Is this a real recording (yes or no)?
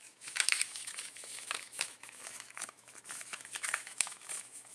no